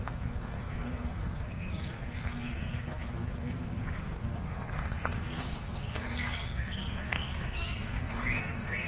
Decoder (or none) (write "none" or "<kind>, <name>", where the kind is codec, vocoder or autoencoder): codec, SNAC